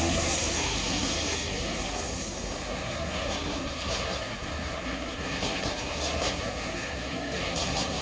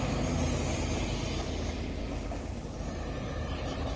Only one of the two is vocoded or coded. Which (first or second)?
first